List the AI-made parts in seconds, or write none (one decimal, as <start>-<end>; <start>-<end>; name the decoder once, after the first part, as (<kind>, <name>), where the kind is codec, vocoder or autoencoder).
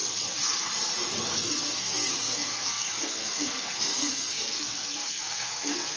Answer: 1.2-6.0 (codec, SNAC)